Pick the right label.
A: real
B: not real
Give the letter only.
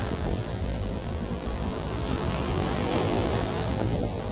B